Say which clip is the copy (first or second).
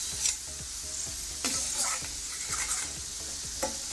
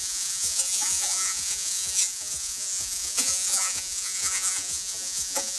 second